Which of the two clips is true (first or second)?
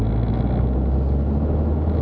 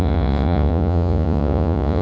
first